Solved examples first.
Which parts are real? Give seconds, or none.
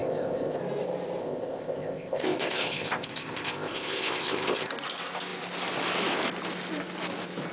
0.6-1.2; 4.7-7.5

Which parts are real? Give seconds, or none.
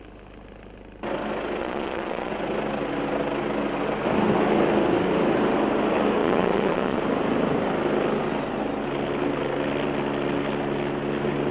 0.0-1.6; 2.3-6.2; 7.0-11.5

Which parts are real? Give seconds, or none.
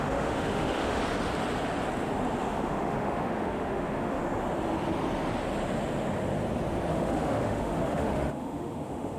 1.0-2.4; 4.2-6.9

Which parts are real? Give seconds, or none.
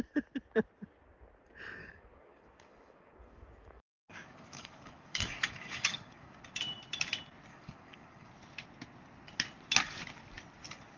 0.0-1.8; 6.4-7.5; 8.3-11.0